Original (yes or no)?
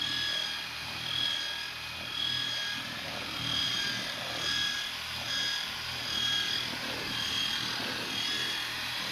yes